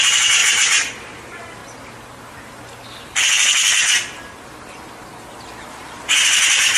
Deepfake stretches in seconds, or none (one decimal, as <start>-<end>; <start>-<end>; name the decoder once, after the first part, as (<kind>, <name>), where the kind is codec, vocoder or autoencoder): 0.0-0.4 (vocoder, BigVGAN v2); 0.9-1.6; 5.7-6.8